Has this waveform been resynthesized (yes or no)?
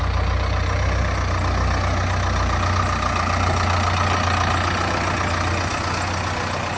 no